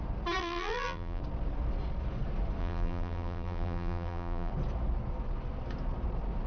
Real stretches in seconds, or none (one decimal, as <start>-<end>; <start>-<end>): 0.0-0.4; 1.2-2.6; 4.5-6.5